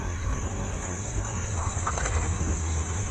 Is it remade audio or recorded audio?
remade